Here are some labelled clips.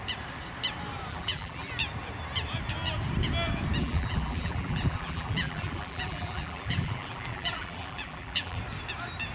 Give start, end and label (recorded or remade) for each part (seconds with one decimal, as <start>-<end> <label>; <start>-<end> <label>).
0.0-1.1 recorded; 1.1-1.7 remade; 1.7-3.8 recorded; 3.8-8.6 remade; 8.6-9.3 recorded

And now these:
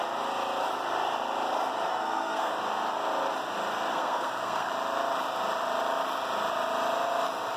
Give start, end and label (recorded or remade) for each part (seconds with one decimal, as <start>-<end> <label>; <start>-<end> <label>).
0.0-1.9 recorded; 1.9-2.5 remade; 2.5-3.9 recorded; 3.9-4.7 remade; 4.7-7.6 recorded

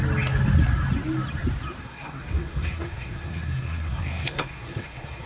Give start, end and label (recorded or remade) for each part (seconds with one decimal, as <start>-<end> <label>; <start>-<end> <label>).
0.0-1.8 recorded; 1.8-5.3 remade